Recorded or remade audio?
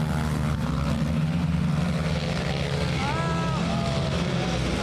recorded